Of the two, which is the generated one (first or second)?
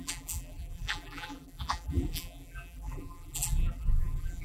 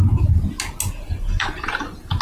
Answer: first